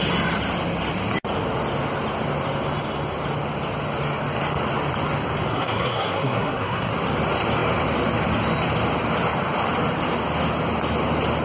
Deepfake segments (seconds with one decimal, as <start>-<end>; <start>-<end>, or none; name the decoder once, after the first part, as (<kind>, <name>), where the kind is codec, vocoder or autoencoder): 5.5-6.9 (codec, SNAC)